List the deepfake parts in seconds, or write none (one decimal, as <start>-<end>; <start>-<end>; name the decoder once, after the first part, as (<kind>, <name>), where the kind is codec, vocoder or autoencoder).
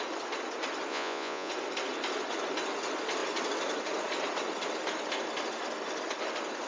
0.9-1.5 (vocoder, Vocos)